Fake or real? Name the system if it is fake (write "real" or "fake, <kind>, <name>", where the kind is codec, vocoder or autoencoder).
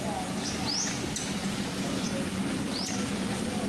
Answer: real